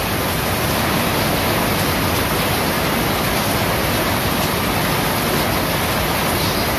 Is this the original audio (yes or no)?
yes